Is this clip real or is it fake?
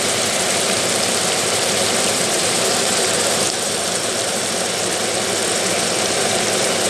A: fake